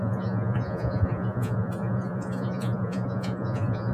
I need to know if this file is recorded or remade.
remade